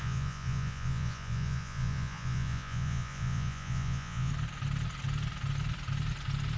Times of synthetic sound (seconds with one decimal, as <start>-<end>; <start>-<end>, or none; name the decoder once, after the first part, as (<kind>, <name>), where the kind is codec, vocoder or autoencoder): 0.0-4.3 (vocoder, Vocos)